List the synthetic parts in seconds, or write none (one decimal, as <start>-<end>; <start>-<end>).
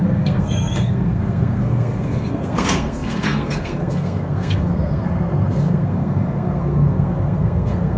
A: 0.0-8.0